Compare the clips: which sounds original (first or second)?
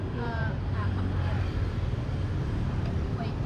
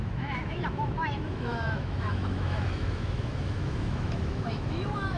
first